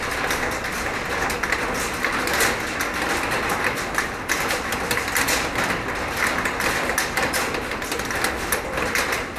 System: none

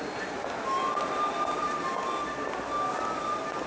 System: none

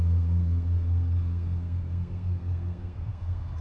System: codec, SNAC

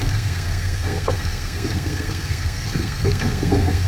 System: codec, SNAC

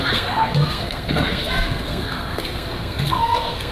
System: codec, SNAC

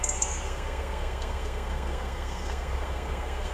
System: codec, SNAC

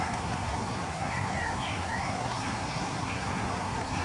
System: codec, SNAC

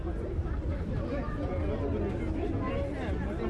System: none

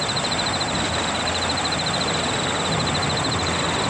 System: none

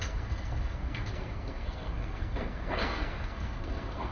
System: codec, SNAC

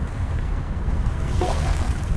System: codec, SNAC